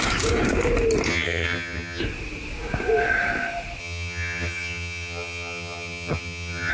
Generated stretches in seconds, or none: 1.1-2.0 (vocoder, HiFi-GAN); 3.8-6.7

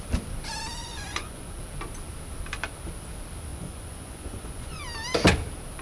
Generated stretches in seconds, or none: 0.8-1.6 (vocoder, Vocos); 3.5-4.8